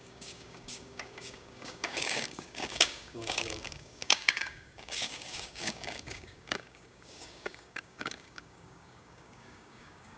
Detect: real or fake fake